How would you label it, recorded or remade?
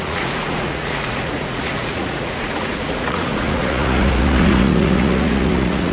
remade